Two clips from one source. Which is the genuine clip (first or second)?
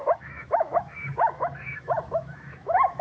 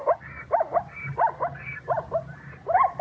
second